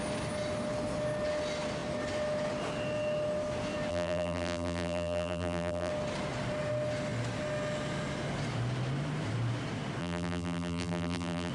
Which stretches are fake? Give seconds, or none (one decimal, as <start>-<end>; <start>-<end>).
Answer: 3.9-5.9; 10.0-11.5